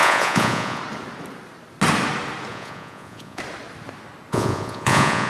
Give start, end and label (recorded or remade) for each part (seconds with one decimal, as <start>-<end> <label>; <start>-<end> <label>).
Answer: 0.0-0.8 remade; 0.8-2.5 recorded; 2.5-3.4 remade; 3.4-4.3 recorded; 4.3-5.3 remade